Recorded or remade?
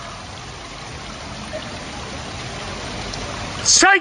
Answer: recorded